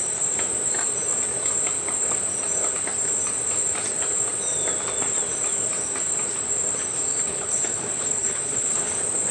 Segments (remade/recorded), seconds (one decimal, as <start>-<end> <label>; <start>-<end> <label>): 0.0-7.3 recorded; 7.3-8.9 remade; 8.9-9.3 recorded